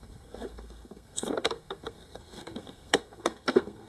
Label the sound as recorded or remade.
remade